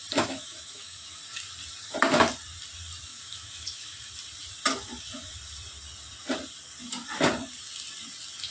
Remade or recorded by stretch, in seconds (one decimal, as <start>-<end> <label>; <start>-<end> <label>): 0.0-1.2 remade; 1.2-3.1 recorded; 3.1-4.1 remade; 4.1-8.5 recorded

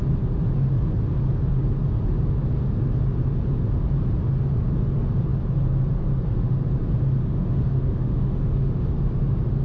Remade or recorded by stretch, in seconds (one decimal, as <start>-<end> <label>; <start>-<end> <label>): 0.0-7.2 recorded; 7.2-9.0 remade; 9.0-9.6 recorded

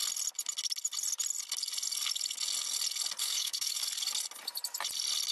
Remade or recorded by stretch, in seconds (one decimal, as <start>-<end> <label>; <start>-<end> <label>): 0.0-3.2 recorded; 3.2-3.8 remade; 3.8-5.3 recorded

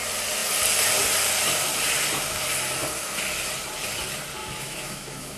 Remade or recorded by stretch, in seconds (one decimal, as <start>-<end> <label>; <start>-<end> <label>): 0.0-4.4 recorded; 4.4-5.4 remade